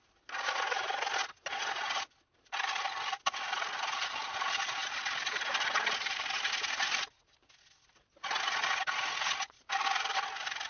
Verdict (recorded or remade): recorded